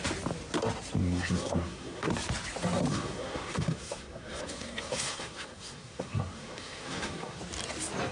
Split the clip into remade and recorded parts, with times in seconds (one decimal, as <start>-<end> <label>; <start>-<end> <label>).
0.0-1.0 recorded; 1.0-2.1 remade; 2.1-2.9 recorded; 2.9-7.4 remade; 7.4-8.1 recorded